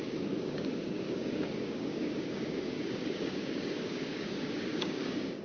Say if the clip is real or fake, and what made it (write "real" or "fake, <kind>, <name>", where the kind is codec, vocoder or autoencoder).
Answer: fake, codec, DAC